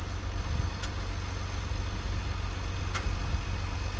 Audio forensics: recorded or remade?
recorded